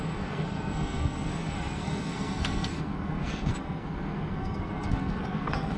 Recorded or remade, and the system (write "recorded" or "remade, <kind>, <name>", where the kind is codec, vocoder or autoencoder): remade, codec, SNAC